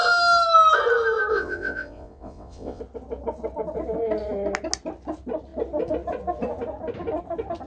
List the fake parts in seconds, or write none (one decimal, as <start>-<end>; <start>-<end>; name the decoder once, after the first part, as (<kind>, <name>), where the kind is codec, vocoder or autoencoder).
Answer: 1.3-2.8 (vocoder, WaveNeXt)